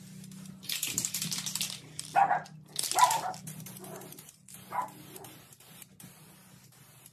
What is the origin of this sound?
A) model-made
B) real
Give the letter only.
B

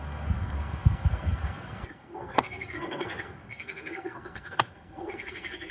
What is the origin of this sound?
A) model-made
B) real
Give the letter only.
A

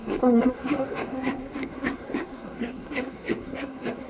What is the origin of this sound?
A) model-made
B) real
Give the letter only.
A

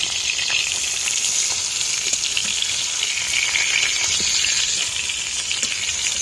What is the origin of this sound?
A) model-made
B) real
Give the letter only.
B